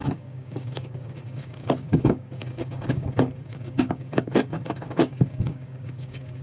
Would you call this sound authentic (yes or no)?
no